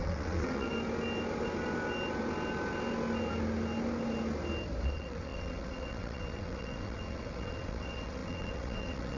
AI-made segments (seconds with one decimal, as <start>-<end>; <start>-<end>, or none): 0.0-0.7; 4.8-9.2